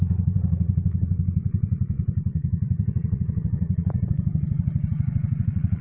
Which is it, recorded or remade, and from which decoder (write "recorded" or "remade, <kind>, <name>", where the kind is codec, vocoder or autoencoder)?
remade, vocoder, Vocos